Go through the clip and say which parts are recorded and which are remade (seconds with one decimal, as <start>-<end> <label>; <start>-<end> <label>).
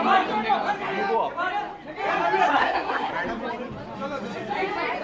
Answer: 0.0-2.5 recorded; 2.5-3.1 remade; 3.1-5.0 recorded